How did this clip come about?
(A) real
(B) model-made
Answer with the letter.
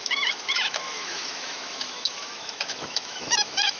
B